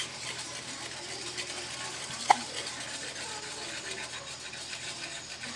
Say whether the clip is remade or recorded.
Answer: recorded